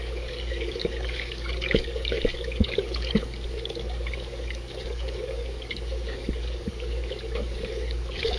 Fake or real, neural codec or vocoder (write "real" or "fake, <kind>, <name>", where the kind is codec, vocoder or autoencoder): fake, codec, DAC